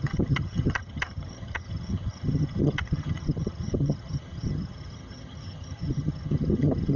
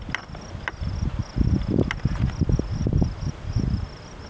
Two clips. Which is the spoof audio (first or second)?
first